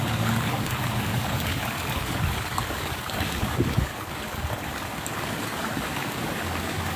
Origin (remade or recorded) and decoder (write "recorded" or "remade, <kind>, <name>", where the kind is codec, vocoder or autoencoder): remade, codec, DAC